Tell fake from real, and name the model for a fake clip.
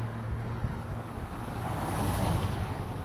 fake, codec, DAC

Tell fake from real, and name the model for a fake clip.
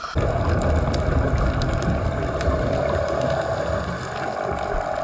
real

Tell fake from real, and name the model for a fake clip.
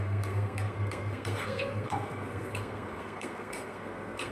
fake, codec, SNAC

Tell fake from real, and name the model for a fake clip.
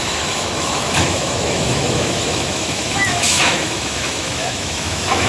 fake, autoencoder, DAC-VAE